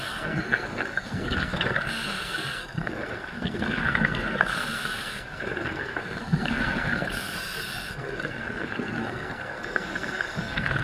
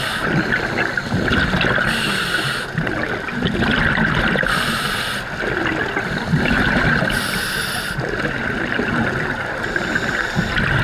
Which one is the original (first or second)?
second